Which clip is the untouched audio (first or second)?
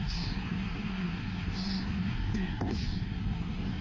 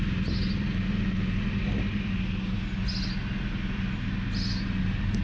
second